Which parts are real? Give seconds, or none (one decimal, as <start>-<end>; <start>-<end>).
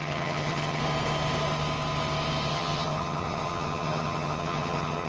0.8-2.5